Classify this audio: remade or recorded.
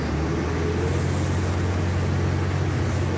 recorded